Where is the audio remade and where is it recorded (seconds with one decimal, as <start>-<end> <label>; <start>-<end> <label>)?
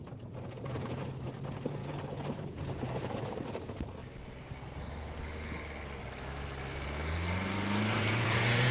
0.0-4.0 remade; 4.0-8.0 recorded; 8.0-8.7 remade